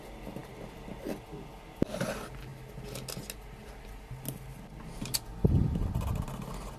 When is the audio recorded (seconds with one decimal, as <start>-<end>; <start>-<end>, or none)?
0.0-6.8